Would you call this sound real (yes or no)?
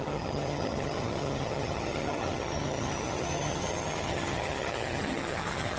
no